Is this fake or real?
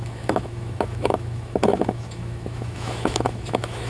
fake